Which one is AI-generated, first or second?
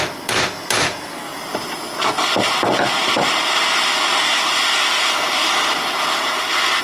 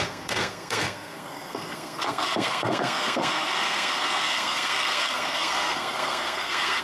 second